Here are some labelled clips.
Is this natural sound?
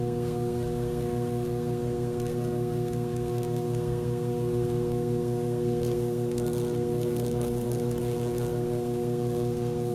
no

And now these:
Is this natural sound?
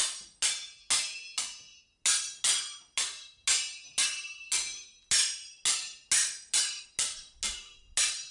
yes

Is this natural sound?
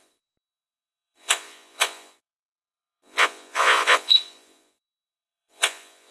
no